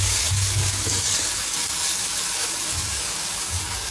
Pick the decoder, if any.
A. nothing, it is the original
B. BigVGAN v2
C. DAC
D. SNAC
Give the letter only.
C